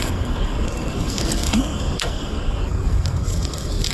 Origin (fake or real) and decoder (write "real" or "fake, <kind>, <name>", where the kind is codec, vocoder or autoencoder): fake, codec, SNAC